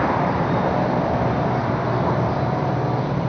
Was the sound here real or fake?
fake